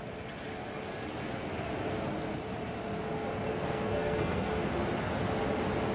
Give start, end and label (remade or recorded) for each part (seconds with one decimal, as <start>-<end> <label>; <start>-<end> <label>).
0.0-3.5 recorded; 3.5-4.5 remade; 4.5-5.9 recorded